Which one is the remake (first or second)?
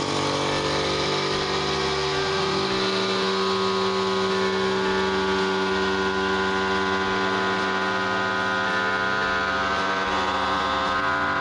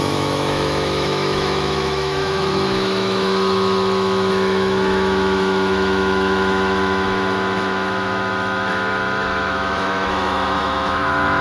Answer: second